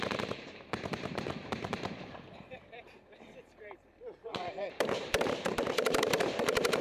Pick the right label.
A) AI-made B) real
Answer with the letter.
A